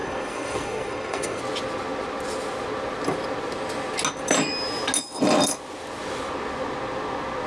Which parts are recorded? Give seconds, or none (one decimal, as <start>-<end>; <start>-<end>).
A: 1.4-7.5

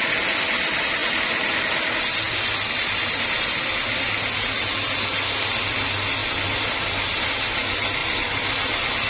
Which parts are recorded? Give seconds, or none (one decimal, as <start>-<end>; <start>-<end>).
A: 0.0-9.1

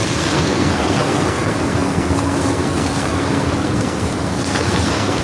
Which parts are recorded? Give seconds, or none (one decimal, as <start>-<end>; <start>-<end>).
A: none

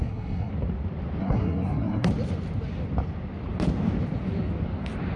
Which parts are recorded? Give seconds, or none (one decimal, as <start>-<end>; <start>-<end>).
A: 0.5-1.2; 2.1-5.2

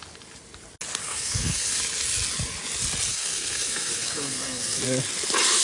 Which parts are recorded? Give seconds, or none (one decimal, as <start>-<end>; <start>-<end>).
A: 0.0-1.0; 1.8-3.1; 4.8-5.6

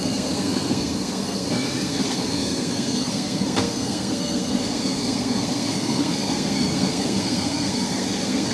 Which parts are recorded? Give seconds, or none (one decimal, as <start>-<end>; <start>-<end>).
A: none